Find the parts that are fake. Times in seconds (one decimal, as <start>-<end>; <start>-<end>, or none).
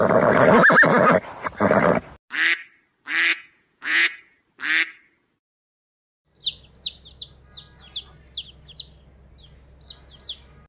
3.3-4.4